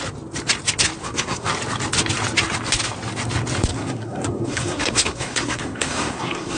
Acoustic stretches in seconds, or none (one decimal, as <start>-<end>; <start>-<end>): 0.0-1.0; 1.5-3.7